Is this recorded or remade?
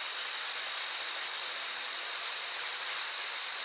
recorded